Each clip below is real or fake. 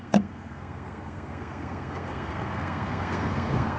fake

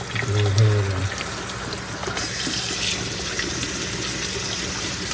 real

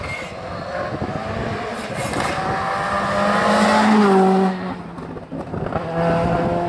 real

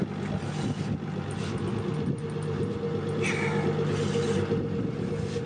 real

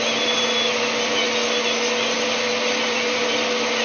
real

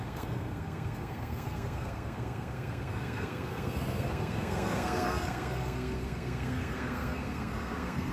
fake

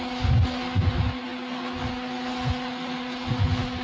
real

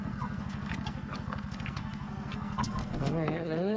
fake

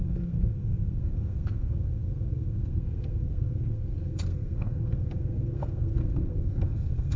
fake